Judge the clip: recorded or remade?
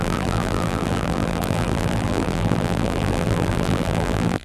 remade